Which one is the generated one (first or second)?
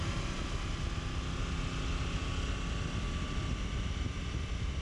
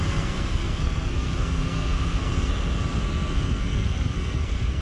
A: second